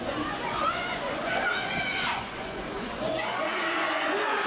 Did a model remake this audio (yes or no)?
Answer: yes